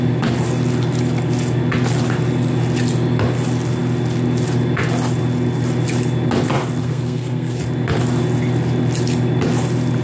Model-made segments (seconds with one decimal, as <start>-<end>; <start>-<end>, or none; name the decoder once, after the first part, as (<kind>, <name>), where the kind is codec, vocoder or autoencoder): 6.8-7.6 (codec, SNAC)